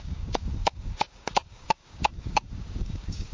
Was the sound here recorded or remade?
remade